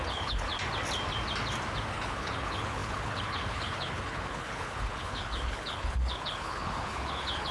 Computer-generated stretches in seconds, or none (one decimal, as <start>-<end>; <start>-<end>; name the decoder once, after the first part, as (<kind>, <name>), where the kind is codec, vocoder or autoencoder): 0.0-0.5 (codec, HILCodec); 1.9-7.5